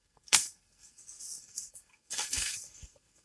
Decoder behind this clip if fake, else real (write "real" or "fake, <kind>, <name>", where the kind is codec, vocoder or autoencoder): fake, codec, SNAC